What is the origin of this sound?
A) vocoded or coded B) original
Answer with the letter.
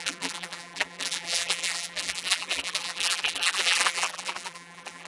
A